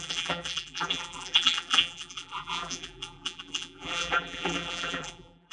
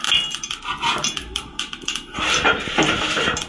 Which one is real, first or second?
second